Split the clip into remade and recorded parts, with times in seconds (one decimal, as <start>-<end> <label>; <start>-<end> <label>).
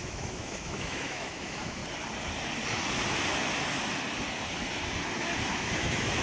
0.0-1.8 remade; 1.8-5.5 recorded; 5.5-6.2 remade